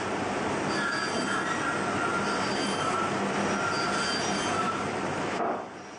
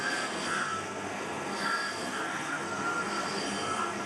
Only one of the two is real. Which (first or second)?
first